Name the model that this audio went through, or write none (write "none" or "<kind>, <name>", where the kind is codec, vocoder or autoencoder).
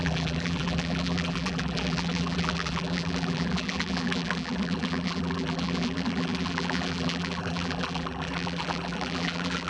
vocoder, BigVGAN v2